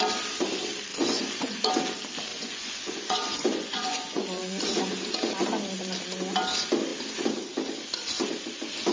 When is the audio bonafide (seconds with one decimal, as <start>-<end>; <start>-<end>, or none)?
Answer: 0.0-0.9; 1.7-2.3; 4.6-8.9